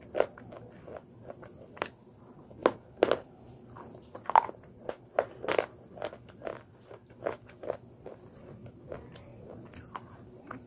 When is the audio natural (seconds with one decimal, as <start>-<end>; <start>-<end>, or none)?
0.0-10.7